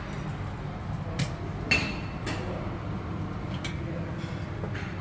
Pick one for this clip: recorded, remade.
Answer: recorded